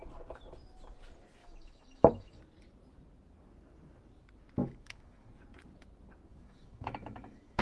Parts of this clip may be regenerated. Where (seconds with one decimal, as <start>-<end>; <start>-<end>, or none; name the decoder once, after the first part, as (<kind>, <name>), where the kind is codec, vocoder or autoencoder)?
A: 1.4-2.4 (autoencoder, DAC-VAE); 4.6-5.3; 6.3-7.6